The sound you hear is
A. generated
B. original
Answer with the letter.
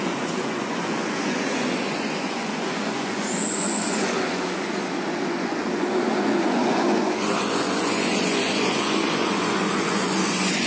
A